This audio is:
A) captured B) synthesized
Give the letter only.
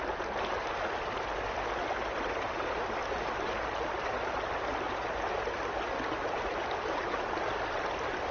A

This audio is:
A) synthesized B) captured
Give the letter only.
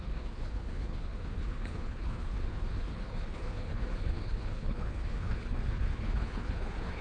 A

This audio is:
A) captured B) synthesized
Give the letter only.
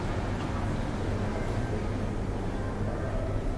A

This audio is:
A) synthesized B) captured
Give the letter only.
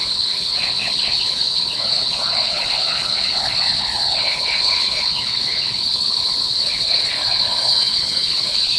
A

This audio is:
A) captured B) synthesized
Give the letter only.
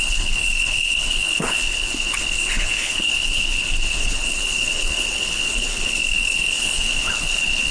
B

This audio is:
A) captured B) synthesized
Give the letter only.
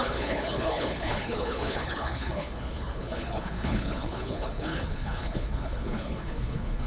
B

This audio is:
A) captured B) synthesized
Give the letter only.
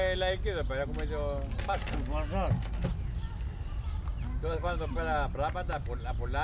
A